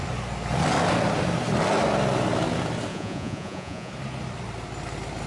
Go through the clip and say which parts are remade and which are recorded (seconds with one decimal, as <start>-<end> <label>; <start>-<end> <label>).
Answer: 0.0-2.9 recorded; 2.9-3.9 remade; 3.9-5.3 recorded